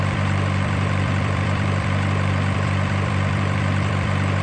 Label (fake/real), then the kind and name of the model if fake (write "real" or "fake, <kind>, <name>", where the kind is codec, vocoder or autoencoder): fake, vocoder, BigVGAN v2